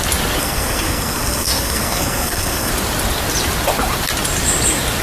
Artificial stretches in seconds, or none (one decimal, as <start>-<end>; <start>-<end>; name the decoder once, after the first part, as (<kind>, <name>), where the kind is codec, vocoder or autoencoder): 0.4-2.7 (codec, SNAC)